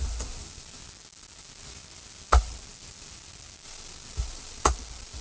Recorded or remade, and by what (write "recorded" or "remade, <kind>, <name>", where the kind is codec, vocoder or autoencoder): recorded